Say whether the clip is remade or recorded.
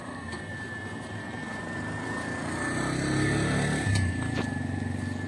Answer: recorded